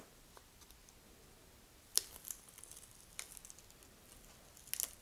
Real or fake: real